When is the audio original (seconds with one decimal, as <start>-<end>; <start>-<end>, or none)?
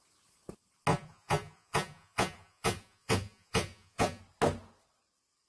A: 0.0-0.9; 4.2-5.5